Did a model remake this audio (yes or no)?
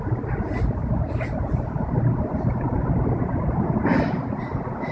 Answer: no